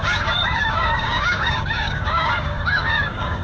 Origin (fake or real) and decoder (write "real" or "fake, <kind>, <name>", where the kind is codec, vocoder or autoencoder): fake, codec, DAC